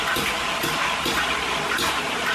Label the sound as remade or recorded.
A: recorded